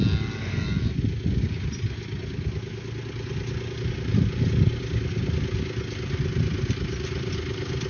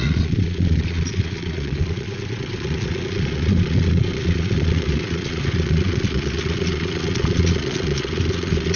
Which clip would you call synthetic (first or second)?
second